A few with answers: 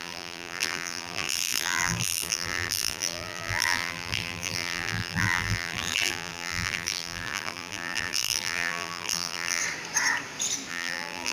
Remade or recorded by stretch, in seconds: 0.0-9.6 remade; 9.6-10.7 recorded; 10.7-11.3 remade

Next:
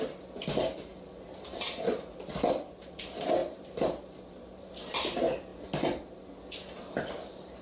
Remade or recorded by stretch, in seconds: 0.0-0.9 recorded; 0.9-2.0 remade; 2.0-3.4 recorded; 3.4-4.7 remade; 4.7-7.6 recorded